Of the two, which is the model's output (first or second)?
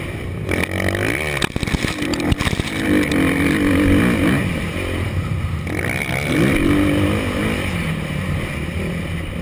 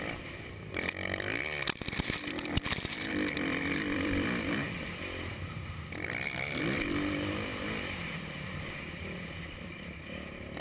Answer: second